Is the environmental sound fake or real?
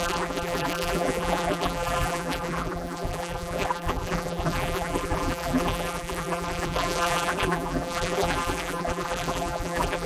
fake